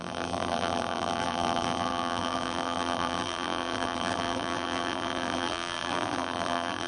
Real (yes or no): no